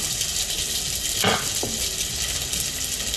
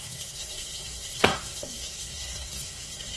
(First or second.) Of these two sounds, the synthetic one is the second